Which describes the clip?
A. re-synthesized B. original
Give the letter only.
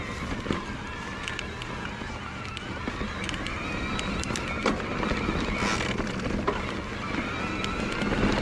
B